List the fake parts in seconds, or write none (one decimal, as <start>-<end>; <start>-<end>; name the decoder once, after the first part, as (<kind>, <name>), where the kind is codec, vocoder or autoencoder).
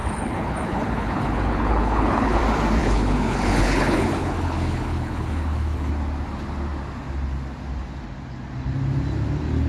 0.0-2.4 (codec, HILCodec); 2.8-5.9